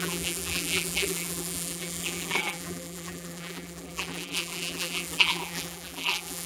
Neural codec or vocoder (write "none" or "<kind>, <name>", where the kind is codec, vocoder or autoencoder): vocoder, BigVGAN v2